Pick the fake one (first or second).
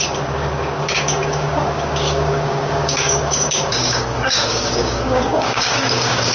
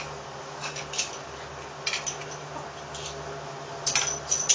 first